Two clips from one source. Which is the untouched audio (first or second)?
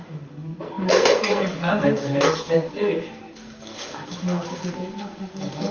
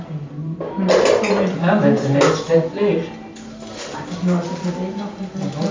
second